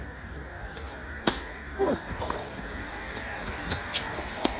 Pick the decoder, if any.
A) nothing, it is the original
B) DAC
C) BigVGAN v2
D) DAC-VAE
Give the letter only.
B